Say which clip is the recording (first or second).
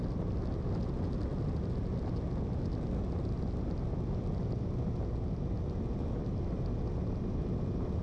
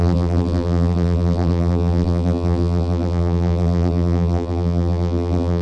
first